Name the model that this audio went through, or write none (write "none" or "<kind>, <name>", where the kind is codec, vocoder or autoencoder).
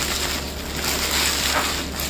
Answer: none